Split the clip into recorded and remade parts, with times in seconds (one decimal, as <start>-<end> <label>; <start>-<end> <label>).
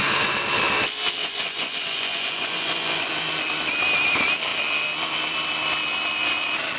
0.0-1.2 recorded; 1.2-3.1 remade; 3.1-6.8 recorded